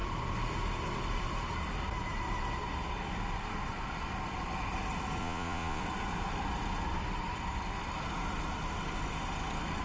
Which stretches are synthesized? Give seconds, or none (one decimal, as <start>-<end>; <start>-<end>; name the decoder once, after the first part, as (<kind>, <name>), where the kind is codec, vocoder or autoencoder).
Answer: 5.2-5.8 (vocoder, Vocos)